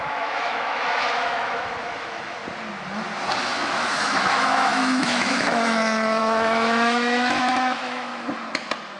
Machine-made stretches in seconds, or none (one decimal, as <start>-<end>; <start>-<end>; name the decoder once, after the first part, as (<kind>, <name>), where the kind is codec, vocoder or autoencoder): 0.0-2.4 (autoencoder, DAC-VAE); 3.4-8.1

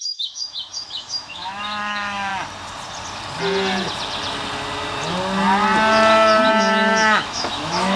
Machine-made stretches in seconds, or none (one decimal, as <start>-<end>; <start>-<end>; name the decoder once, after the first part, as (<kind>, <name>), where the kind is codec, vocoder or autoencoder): 0.0-2.3 (autoencoder, DAC-VAE); 6.5-8.0

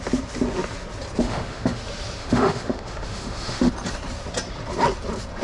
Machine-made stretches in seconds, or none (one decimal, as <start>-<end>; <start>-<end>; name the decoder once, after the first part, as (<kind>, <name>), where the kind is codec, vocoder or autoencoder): 1.2-1.8 (autoencoder, DAC-VAE); 2.2-3.7

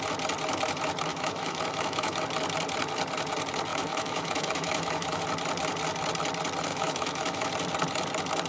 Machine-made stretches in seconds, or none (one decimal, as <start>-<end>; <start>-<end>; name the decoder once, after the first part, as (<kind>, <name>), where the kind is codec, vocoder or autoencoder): 1.1-2.2 (autoencoder, DAC-VAE); 3.7-5.2; 6.7-7.5

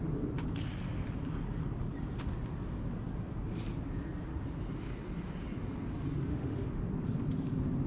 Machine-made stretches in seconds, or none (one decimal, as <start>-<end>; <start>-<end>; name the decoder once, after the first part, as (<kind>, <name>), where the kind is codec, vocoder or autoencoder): 6.3-6.9 (autoencoder, DAC-VAE)